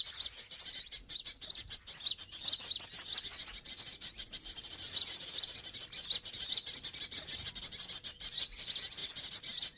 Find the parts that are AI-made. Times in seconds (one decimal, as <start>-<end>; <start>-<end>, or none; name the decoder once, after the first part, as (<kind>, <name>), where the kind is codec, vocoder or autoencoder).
none